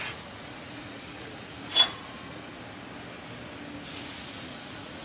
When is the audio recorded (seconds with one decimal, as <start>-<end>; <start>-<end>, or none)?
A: 2.5-3.9